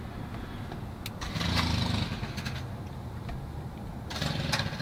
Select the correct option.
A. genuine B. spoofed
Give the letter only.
A